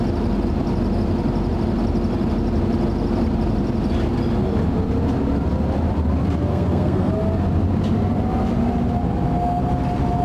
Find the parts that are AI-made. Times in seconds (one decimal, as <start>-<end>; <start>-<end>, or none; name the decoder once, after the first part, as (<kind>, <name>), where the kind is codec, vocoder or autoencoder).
6.5-7.1 (codec, SNAC)